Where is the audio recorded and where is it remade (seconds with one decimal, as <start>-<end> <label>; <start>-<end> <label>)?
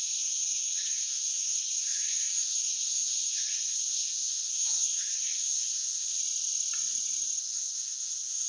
0.0-6.2 remade; 6.2-7.4 recorded; 7.4-8.5 remade